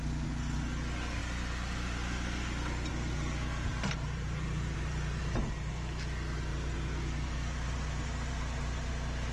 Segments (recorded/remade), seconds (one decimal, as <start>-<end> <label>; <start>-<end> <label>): 0.0-3.7 recorded; 3.7-5.7 remade; 5.7-6.5 recorded; 6.5-8.9 remade; 8.9-9.3 recorded